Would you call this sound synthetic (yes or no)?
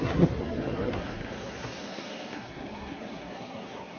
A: yes